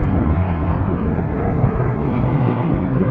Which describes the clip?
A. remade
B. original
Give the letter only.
A